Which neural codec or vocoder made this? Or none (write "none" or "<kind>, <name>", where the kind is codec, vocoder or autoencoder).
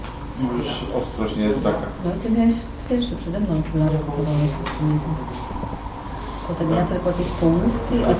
none